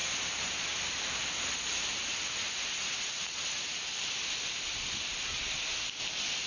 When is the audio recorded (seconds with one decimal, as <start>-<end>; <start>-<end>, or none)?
0.0-6.5